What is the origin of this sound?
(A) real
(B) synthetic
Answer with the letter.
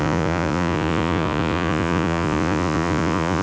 B